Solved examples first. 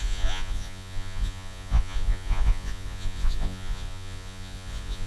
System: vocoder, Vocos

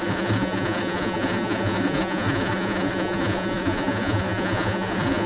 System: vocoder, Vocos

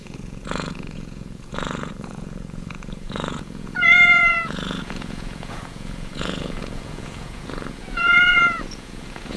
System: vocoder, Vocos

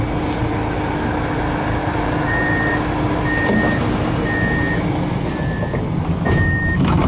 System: none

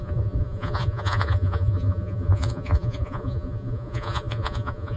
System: vocoder, Vocos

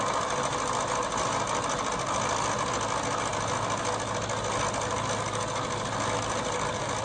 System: none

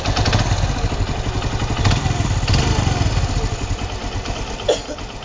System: none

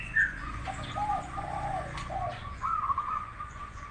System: vocoder, Vocos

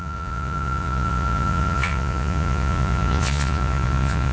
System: vocoder, Vocos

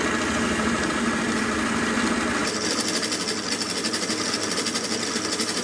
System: none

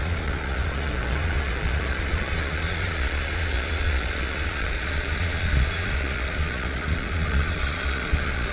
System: vocoder, Vocos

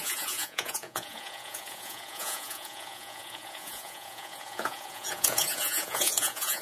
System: vocoder, Vocos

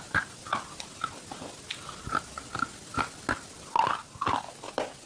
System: none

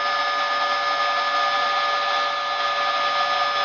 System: none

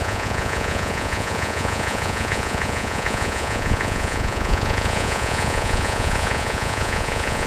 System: vocoder, Vocos